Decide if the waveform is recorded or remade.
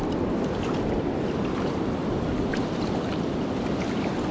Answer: recorded